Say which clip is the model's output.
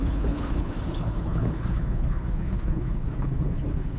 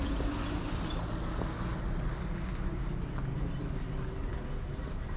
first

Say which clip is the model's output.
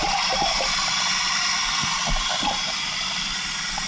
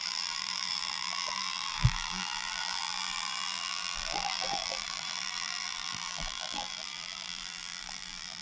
second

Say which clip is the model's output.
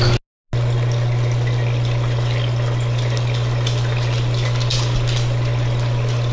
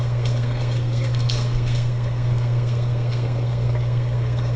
second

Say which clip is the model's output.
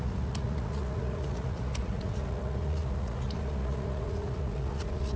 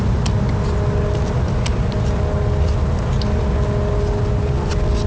first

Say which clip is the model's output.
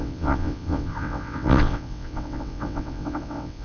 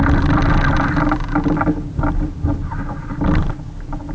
first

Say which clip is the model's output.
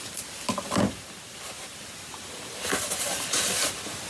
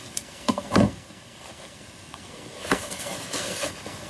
second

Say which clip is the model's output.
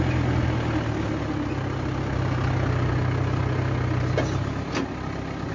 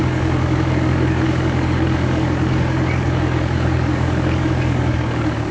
second